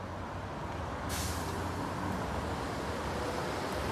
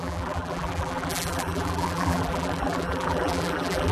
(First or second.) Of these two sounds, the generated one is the second